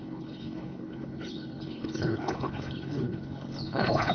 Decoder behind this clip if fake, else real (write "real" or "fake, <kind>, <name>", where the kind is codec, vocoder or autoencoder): fake, codec, HILCodec